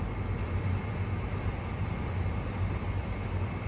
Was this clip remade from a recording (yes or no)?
no